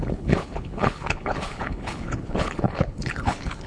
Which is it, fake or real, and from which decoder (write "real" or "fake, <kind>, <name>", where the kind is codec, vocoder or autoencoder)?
fake, codec, HILCodec